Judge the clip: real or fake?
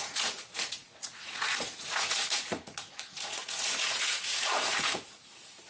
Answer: fake